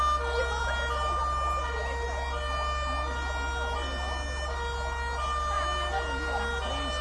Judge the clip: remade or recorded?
recorded